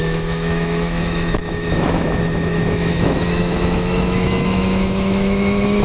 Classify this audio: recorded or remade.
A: remade